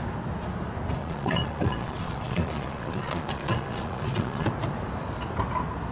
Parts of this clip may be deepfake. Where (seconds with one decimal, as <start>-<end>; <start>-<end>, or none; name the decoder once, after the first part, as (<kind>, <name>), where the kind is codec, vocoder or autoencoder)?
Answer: 1.0-4.5 (vocoder, Vocos)